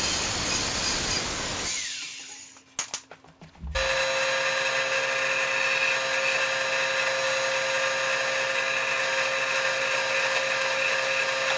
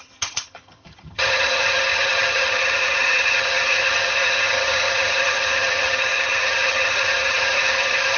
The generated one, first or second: second